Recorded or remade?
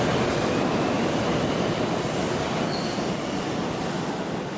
recorded